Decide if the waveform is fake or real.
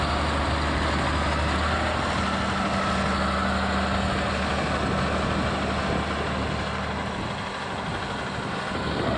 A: real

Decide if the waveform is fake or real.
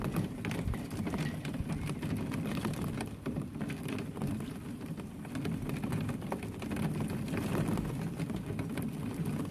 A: real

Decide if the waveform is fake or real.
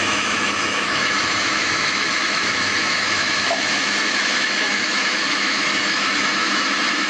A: fake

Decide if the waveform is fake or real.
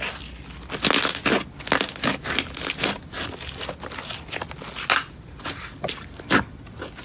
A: real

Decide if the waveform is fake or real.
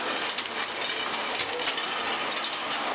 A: real